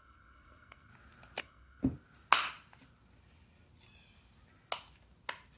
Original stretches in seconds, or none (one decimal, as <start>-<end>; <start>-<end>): 0.9-1.4; 1.8-5.6